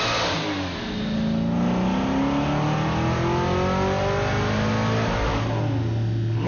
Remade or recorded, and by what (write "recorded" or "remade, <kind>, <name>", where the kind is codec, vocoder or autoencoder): recorded